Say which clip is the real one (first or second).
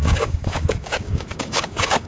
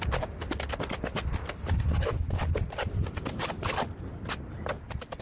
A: second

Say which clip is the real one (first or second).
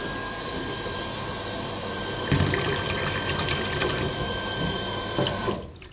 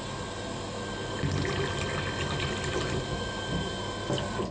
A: second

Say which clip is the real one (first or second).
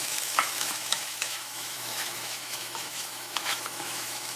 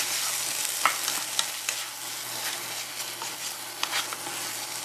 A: second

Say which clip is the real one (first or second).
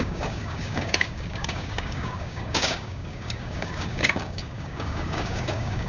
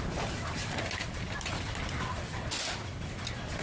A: second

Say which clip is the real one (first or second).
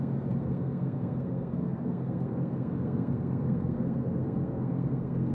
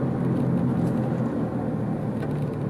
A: second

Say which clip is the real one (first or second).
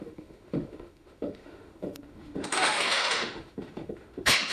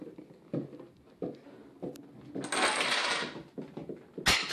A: second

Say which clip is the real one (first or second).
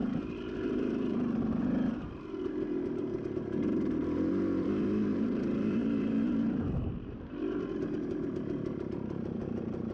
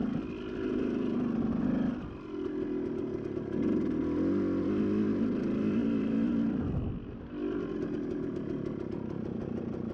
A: second